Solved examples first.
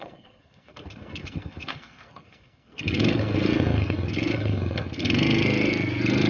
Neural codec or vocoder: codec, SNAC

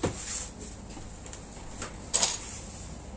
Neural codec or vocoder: none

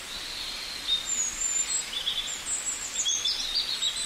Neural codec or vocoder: none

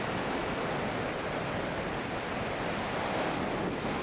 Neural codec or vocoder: none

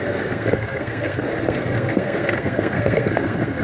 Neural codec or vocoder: codec, SNAC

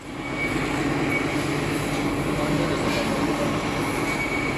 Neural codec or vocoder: none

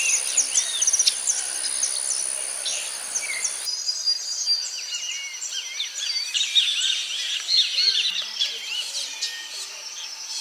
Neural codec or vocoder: none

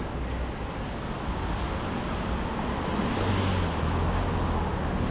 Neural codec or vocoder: none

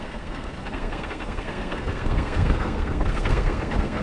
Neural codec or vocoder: codec, SNAC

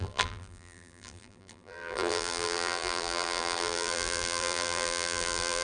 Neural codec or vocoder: vocoder, BigVGAN v2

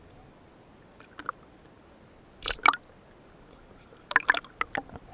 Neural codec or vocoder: none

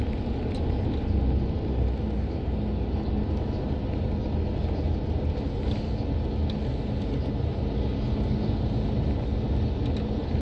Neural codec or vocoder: none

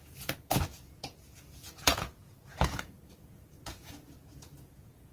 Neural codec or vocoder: vocoder, Vocos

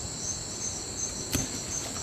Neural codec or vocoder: none